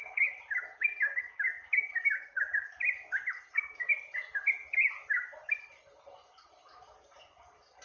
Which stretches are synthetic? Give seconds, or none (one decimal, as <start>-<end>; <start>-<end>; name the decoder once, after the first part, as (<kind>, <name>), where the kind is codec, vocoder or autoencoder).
none